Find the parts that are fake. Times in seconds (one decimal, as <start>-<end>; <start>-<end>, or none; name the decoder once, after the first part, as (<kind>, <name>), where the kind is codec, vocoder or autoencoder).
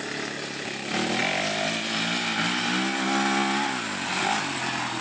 none